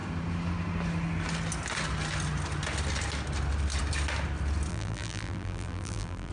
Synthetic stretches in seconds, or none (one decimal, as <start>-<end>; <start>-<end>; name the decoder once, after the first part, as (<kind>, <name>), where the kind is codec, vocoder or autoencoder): 4.7-6.3 (vocoder, BigVGAN v2)